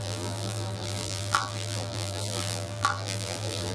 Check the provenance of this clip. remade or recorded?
remade